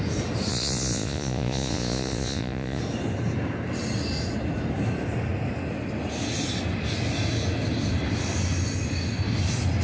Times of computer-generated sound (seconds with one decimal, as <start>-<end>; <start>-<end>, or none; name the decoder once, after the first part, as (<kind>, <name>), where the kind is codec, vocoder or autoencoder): 0.5-2.8 (vocoder, Vocos)